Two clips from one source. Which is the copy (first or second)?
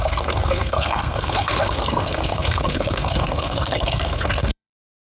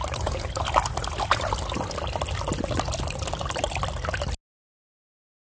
first